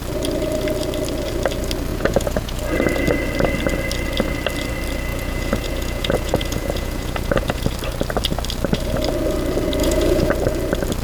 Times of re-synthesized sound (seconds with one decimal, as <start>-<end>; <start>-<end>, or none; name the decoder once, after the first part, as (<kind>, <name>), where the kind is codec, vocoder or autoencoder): 1.9-2.6 (vocoder, Vocos); 5.1-7.6; 9.8-10.3